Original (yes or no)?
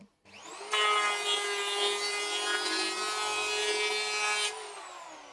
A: yes